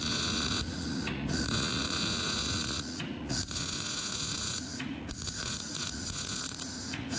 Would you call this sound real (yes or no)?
no